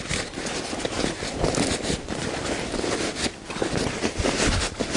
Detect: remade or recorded recorded